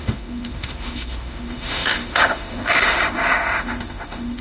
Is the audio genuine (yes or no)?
no